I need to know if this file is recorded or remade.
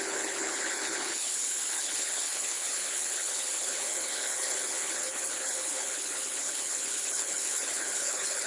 remade